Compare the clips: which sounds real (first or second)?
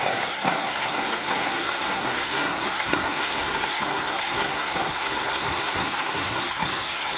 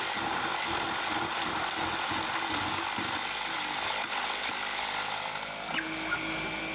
second